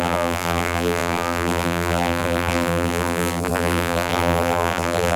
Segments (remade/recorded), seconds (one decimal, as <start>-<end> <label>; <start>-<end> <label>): 0.0-5.2 remade